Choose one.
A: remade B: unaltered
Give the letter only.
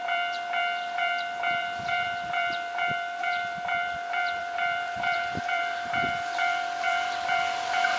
A